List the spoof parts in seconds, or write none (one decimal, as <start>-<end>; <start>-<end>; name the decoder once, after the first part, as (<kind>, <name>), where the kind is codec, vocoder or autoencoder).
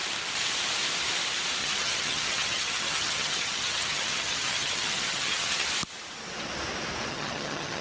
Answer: 1.6-5.7 (vocoder, HiFi-GAN); 7.1-7.8